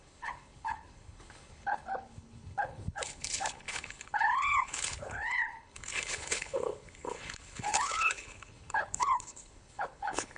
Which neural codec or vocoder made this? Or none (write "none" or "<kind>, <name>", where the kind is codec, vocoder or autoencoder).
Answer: codec, HILCodec